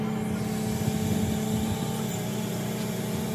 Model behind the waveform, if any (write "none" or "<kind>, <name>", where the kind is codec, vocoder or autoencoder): none